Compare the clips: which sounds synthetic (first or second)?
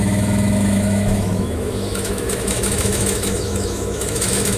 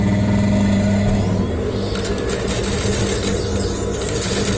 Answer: first